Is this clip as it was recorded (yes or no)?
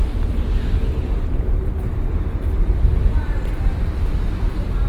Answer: yes